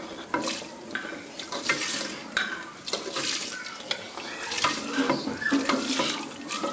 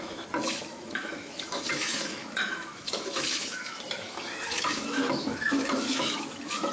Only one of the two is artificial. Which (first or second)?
second